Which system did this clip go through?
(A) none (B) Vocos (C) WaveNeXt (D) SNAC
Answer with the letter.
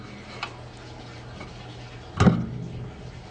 A